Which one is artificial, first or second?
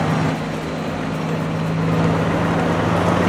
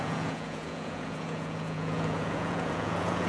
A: second